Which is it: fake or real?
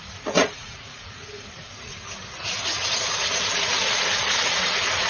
fake